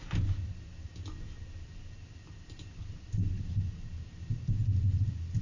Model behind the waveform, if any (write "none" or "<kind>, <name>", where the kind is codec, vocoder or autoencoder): none